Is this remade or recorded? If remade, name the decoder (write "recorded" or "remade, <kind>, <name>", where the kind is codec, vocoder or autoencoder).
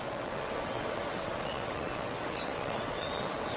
remade, vocoder, WaveNeXt